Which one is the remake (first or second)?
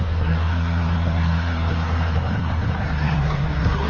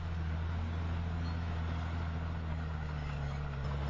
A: first